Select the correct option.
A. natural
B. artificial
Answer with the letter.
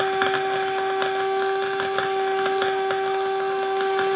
A